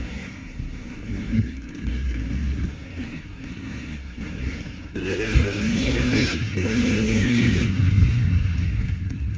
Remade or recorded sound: remade